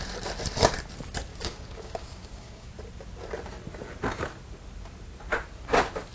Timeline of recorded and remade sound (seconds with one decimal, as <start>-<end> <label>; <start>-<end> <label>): 0.0-1.3 recorded; 1.3-2.7 remade; 2.7-6.1 recorded